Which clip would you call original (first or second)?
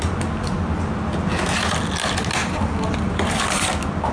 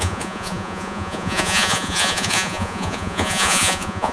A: first